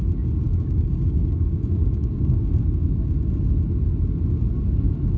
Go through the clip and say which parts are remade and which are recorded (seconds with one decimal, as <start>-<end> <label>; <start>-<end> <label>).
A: 0.0-0.5 recorded; 0.5-2.4 remade; 2.4-5.2 recorded